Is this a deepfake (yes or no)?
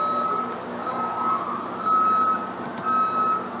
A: no